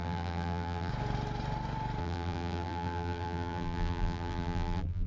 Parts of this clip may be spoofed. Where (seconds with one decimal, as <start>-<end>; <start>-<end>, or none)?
0.0-0.9; 2.0-5.1